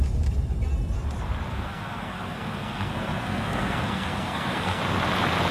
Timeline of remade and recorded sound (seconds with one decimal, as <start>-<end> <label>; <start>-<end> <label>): 0.0-1.5 recorded; 1.5-4.8 remade; 4.8-5.5 recorded